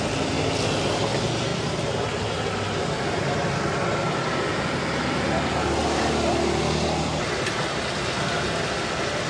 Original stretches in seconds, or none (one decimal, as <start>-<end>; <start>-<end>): 0.0-1.5; 2.1-4.5; 5.1-9.3